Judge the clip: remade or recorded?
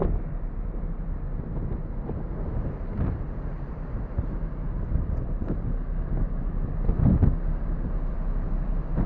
remade